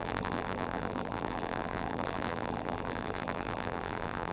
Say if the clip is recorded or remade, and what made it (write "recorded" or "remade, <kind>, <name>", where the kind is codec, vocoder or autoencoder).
remade, vocoder, BigVGAN v2